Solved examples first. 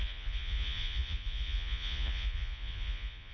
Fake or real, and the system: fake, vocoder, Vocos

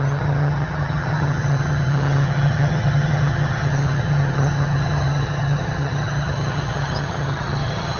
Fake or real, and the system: fake, vocoder, HiFi-GAN